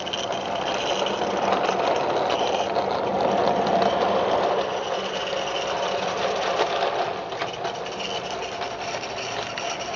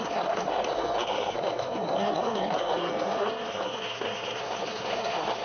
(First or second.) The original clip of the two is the first